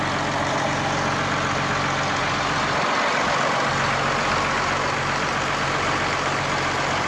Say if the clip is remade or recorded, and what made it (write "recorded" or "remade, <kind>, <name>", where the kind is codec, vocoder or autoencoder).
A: recorded